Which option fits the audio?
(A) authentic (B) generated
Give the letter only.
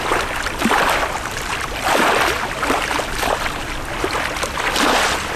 A